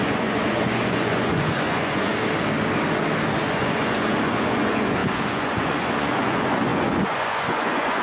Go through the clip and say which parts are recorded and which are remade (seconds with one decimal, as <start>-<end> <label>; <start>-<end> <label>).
0.0-2.1 remade; 2.1-3.5 recorded; 3.5-8.0 remade